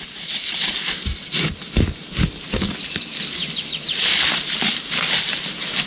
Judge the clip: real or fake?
real